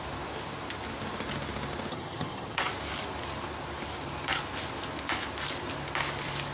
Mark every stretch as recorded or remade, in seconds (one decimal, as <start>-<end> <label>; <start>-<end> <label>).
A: 0.0-1.9 recorded; 1.9-2.7 remade; 2.7-6.5 recorded